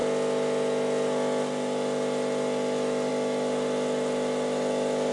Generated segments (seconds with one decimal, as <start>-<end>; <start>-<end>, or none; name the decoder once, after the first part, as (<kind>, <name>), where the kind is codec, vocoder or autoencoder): none